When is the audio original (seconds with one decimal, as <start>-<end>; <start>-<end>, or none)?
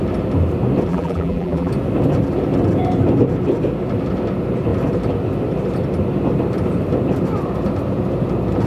0.0-0.9; 1.7-8.7